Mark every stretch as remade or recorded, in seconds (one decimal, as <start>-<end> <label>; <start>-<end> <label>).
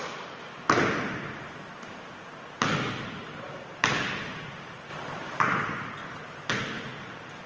0.0-4.9 recorded; 4.9-5.4 remade; 5.4-7.5 recorded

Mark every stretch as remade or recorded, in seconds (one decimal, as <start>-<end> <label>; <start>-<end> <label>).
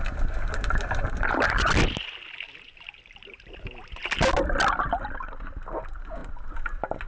0.0-7.1 recorded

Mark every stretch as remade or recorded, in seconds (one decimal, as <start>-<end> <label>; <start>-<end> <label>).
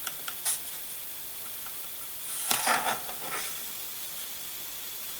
0.0-5.2 recorded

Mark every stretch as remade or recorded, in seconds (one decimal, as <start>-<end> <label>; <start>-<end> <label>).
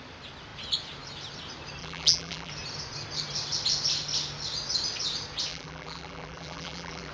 0.0-1.8 recorded; 1.8-2.5 remade; 2.5-5.5 recorded; 5.5-7.1 remade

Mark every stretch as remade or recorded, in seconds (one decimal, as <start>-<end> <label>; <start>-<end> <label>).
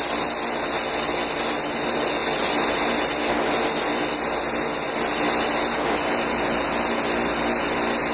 0.0-8.1 recorded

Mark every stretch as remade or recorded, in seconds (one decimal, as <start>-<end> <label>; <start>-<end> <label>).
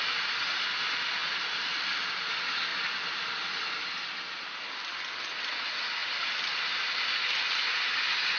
0.0-1.2 recorded; 1.2-2.2 remade; 2.2-2.7 recorded; 2.7-3.4 remade; 3.4-8.4 recorded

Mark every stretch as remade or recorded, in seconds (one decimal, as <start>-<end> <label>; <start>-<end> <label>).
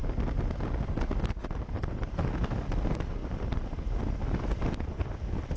0.0-3.2 recorded; 3.2-4.0 remade; 4.0-5.6 recorded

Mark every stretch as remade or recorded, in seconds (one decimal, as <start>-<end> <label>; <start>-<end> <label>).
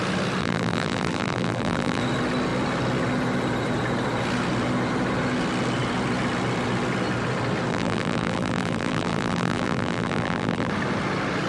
0.0-0.4 recorded; 0.4-2.0 remade; 2.0-7.7 recorded; 7.7-10.7 remade; 10.7-11.5 recorded